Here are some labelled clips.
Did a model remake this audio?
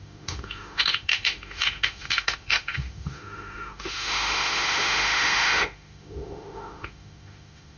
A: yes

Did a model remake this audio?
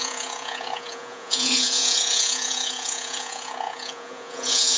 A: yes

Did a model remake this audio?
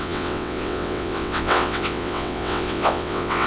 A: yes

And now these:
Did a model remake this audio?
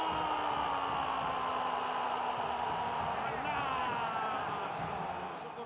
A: no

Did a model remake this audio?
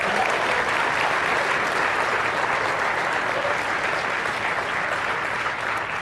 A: no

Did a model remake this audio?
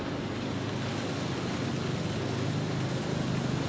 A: no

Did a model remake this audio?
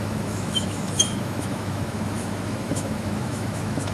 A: yes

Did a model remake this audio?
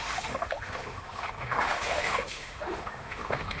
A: yes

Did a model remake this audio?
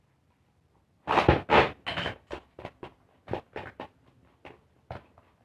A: no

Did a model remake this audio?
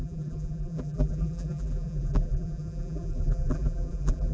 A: yes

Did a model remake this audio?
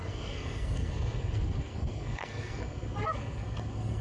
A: yes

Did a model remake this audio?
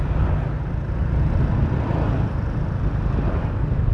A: no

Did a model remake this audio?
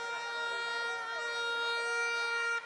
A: no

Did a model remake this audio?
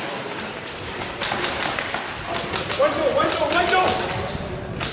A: no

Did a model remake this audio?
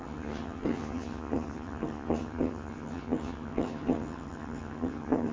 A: yes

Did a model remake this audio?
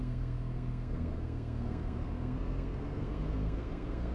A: yes